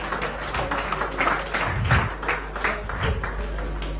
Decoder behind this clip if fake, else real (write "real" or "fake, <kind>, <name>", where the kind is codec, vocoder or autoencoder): real